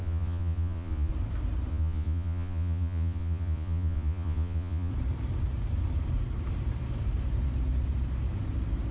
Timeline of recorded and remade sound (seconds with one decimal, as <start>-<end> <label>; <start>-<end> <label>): 0.0-1.1 remade; 1.1-1.7 recorded; 1.7-4.9 remade; 4.9-8.9 recorded